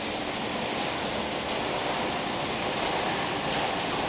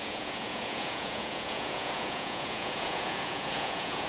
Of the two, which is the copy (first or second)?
second